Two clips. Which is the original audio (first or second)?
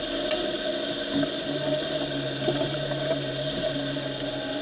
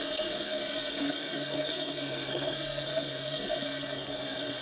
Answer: first